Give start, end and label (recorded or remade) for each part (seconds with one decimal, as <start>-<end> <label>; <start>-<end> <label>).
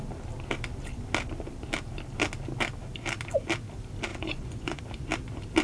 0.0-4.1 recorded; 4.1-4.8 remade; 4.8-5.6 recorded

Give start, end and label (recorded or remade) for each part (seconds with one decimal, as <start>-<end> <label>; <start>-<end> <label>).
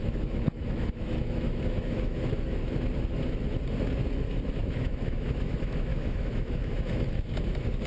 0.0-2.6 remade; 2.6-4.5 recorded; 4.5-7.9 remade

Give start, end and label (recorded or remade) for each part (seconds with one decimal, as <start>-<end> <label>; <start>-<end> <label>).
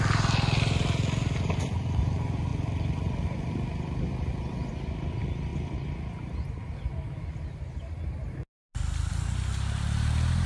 0.0-10.5 recorded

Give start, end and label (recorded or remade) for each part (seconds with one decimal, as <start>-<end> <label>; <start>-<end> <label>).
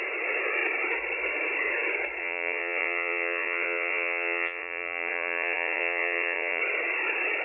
0.0-2.2 recorded; 2.2-6.6 remade; 6.6-7.4 recorded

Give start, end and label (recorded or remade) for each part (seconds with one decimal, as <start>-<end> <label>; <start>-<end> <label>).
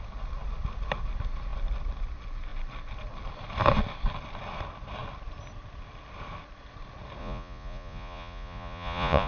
0.0-7.2 recorded; 7.2-9.3 remade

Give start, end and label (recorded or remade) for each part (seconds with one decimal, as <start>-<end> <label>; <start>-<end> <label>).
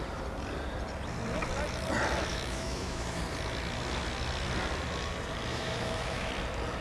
0.0-2.3 recorded; 2.3-3.2 remade; 3.2-5.5 recorded; 5.5-6.3 remade; 6.3-6.8 recorded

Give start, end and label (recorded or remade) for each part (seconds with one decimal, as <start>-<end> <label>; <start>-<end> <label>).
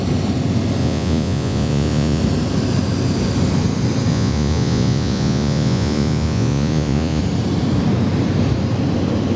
0.0-0.8 recorded; 0.8-2.2 remade; 2.2-4.1 recorded; 4.1-7.2 remade; 7.2-9.4 recorded